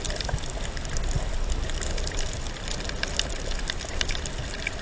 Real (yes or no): yes